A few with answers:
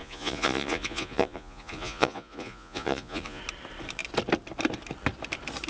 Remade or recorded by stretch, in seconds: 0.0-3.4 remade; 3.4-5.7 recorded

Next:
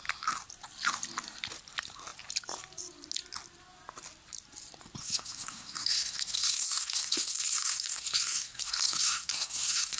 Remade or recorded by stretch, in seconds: 0.0-5.0 recorded; 5.0-10.0 remade

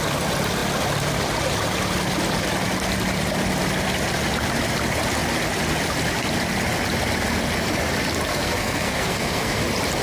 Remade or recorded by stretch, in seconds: 0.0-8.3 recorded; 8.3-9.6 remade; 9.6-10.0 recorded

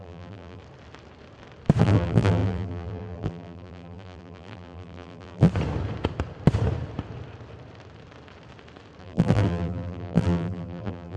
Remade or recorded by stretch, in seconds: 0.0-0.6 remade; 0.6-1.8 recorded; 1.8-5.5 remade; 5.5-9.0 recorded; 9.0-11.2 remade